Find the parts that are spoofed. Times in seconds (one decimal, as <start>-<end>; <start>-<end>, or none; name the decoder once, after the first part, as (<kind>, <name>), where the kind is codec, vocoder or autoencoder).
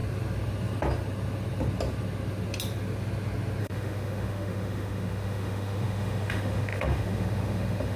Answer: 3.6-8.0 (autoencoder, DAC-VAE)